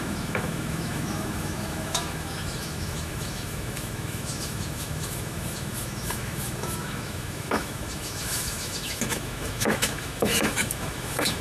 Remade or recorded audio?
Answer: remade